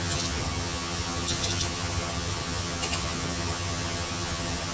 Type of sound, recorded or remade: remade